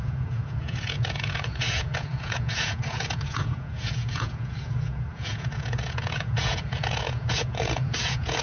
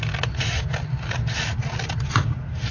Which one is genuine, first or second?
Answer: second